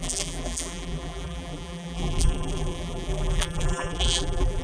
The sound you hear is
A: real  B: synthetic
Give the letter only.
B